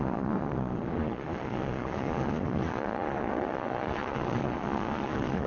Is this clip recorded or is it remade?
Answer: remade